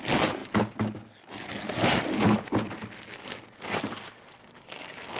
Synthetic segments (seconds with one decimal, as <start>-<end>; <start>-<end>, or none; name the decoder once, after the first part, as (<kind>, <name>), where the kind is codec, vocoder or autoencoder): 4.4-5.2 (codec, DAC)